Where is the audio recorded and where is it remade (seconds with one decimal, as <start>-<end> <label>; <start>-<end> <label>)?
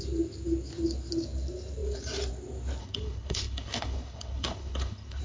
0.0-2.8 recorded; 2.8-5.2 remade